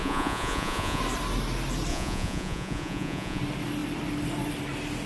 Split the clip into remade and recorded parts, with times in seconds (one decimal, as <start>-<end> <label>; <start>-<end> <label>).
0.0-1.0 remade; 1.0-1.9 recorded; 1.9-3.4 remade; 3.4-5.1 recorded

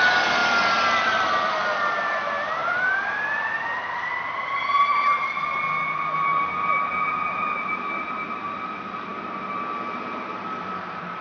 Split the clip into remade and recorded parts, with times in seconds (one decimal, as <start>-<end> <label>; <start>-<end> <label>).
0.0-5.5 remade; 5.5-7.7 recorded; 7.7-11.2 remade

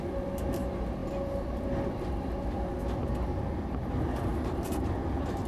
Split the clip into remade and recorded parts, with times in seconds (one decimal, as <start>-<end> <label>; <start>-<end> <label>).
0.0-4.3 recorded; 4.3-4.8 remade; 4.8-5.5 recorded

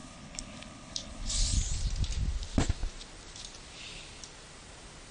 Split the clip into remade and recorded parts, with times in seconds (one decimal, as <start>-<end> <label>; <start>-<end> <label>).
0.0-1.6 remade; 1.6-5.1 recorded